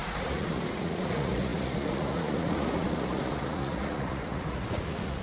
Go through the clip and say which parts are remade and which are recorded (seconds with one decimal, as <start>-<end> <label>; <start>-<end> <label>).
0.0-5.2 remade